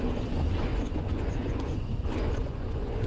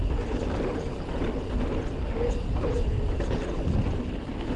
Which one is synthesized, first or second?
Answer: first